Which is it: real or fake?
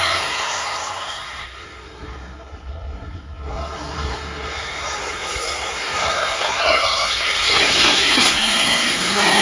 fake